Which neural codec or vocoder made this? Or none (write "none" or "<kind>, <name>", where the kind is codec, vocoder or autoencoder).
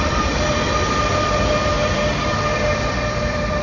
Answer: vocoder, BigVGAN v2